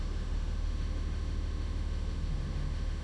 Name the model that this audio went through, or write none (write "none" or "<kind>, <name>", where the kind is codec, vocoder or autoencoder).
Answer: autoencoder, DAC-VAE